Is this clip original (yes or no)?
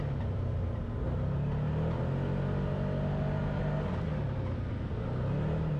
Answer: yes